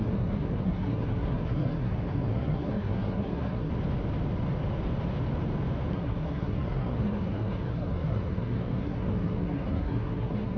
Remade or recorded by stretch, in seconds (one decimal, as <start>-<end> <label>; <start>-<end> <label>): 0.0-3.7 remade; 3.7-5.9 recorded; 5.9-10.6 remade